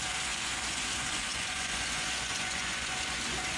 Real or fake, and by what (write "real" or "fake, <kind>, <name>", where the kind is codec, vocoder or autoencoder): fake, vocoder, Vocos